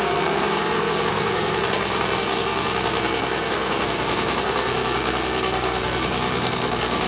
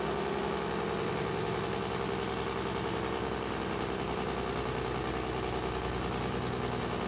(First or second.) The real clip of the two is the second